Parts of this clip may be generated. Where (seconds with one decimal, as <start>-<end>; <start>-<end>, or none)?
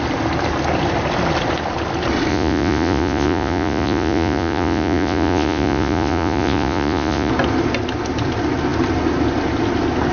2.3-7.3